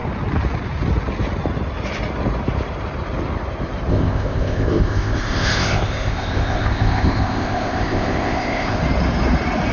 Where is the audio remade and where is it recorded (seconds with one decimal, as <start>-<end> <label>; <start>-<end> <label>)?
0.0-3.9 recorded; 3.9-8.8 remade; 8.8-9.7 recorded